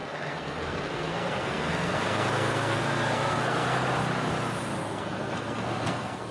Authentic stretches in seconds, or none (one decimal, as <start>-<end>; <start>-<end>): 3.8-4.8